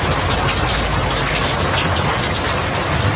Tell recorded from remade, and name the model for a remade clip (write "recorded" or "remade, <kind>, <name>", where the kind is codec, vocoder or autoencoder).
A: recorded